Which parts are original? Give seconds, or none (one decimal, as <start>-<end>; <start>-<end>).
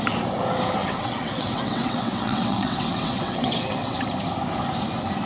0.0-0.8; 4.0-5.3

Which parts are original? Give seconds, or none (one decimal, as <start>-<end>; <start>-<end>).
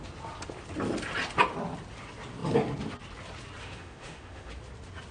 0.0-3.6; 4.5-5.1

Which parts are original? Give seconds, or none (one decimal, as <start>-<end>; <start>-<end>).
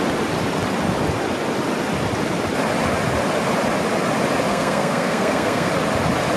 0.0-4.5; 5.7-6.4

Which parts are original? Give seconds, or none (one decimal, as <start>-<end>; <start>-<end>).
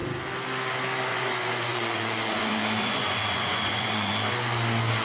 0.0-1.1; 4.1-5.0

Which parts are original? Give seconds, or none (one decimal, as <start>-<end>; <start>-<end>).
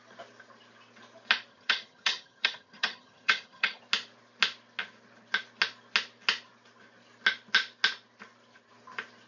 0.0-1.5; 3.8-9.3